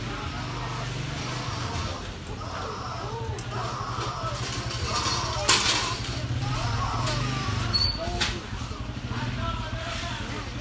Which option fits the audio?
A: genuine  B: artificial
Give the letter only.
A